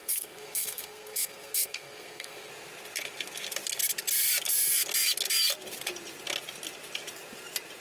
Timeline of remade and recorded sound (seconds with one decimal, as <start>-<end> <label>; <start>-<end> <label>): 0.0-2.5 remade; 2.5-7.8 recorded